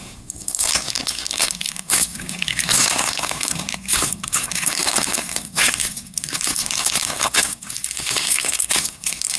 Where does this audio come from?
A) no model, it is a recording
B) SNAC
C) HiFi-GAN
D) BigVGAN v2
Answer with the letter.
B